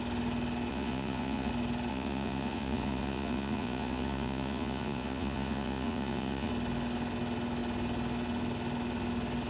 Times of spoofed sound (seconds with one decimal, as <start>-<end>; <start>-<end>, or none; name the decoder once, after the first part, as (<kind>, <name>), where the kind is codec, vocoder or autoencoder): 0.7-1.5 (vocoder, Vocos); 1.9-6.5